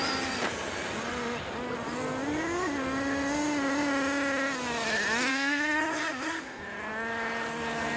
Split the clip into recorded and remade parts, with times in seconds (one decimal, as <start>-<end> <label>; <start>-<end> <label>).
0.0-5.3 recorded; 5.3-6.6 remade; 6.6-8.0 recorded